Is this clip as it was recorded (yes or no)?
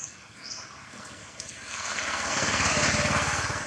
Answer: no